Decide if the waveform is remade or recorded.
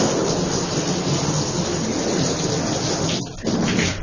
recorded